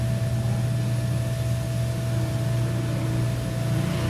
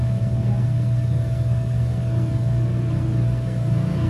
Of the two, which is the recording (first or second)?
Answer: first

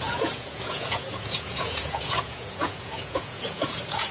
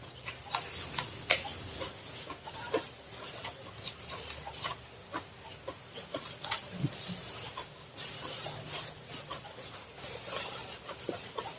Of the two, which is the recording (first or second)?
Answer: second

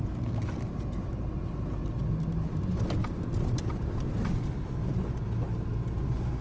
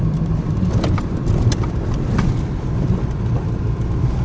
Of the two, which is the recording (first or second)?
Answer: first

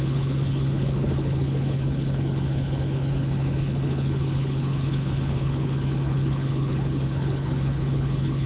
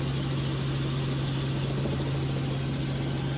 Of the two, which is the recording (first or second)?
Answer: second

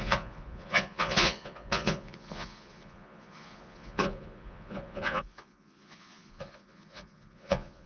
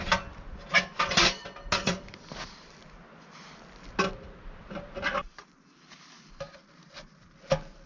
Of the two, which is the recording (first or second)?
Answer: second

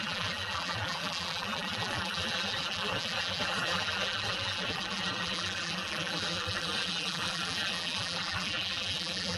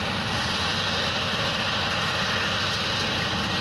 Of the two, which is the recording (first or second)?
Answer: second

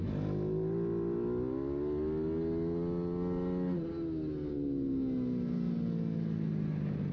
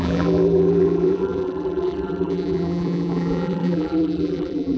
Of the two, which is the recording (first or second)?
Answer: first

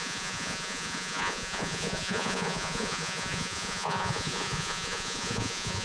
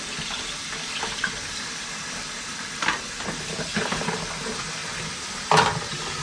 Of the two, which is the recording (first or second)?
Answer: second